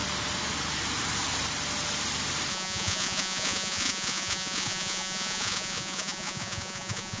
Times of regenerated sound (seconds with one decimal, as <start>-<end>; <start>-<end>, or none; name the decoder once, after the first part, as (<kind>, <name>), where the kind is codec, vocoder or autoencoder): 2.5-7.2 (vocoder, Vocos)